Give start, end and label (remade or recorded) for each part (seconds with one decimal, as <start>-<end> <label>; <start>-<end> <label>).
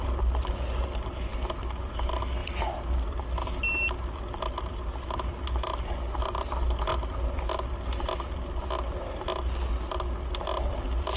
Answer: 0.0-11.2 recorded